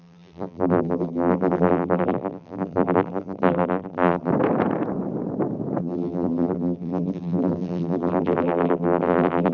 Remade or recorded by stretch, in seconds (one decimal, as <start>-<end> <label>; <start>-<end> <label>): 0.0-4.3 remade; 4.3-5.8 recorded; 5.8-9.5 remade